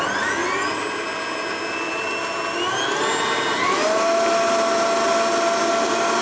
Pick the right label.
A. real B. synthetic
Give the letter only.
A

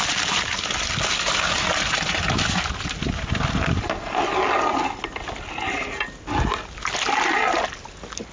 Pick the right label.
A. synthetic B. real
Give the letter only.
B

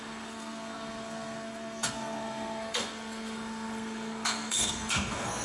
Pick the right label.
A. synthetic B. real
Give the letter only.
A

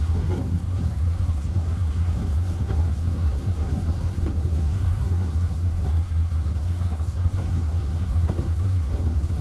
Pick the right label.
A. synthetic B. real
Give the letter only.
A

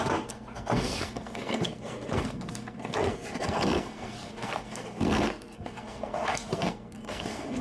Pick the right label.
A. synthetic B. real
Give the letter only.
A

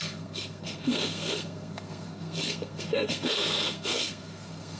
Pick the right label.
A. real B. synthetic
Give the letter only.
B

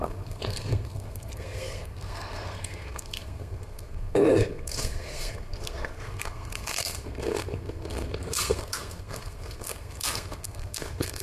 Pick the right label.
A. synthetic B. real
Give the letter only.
A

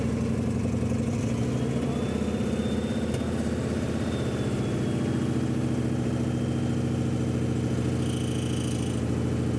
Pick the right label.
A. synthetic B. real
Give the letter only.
B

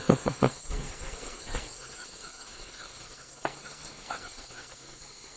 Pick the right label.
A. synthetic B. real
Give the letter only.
A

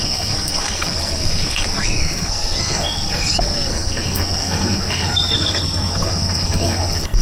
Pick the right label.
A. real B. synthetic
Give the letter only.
B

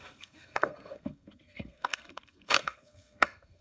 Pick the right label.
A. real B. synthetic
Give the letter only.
B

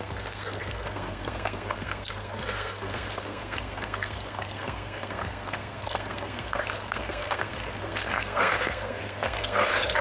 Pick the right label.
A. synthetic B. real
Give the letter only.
A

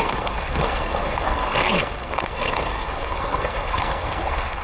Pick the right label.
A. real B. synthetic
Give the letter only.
B